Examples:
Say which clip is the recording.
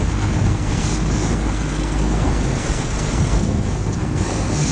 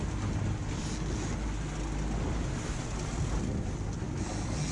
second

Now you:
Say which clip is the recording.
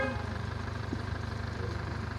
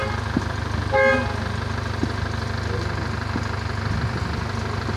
second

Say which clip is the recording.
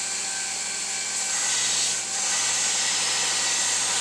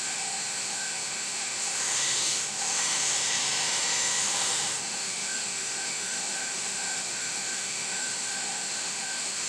first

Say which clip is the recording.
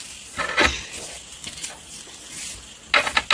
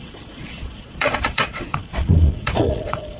first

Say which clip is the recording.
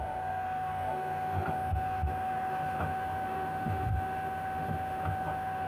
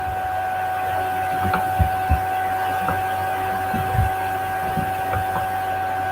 second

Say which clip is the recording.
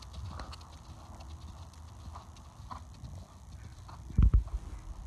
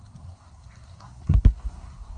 first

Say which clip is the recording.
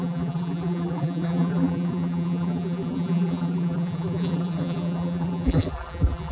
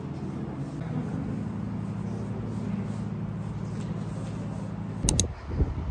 second